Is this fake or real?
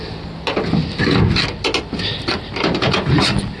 real